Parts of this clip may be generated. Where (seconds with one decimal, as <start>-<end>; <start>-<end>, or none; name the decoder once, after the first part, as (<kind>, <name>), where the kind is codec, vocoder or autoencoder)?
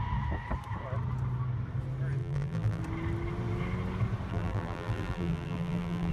2.2-2.8 (vocoder, BigVGAN v2); 4.3-6.1